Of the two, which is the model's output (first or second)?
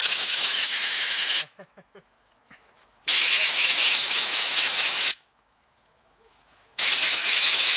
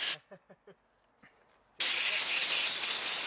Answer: first